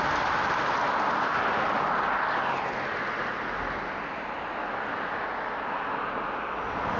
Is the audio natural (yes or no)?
yes